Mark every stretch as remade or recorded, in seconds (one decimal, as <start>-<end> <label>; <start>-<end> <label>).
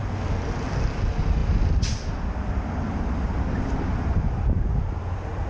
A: 0.0-5.5 recorded